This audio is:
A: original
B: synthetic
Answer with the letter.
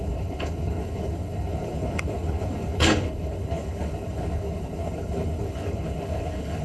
B